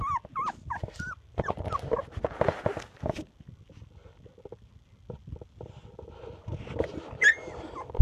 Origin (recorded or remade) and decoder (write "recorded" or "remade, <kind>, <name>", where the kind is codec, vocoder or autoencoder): recorded